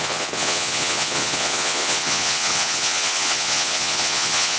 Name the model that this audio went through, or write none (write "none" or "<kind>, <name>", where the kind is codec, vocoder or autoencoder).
vocoder, Vocos